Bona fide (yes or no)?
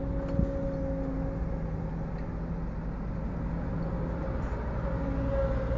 yes